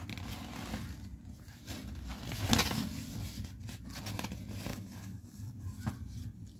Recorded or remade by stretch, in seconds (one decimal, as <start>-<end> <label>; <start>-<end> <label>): 0.0-4.7 recorded; 4.7-5.6 remade; 5.6-6.6 recorded